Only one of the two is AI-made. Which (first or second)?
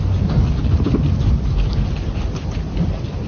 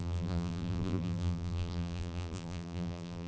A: second